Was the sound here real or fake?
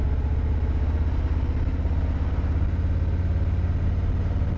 real